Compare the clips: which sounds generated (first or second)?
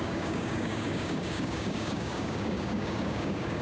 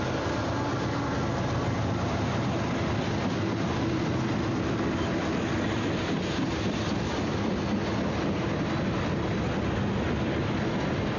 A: first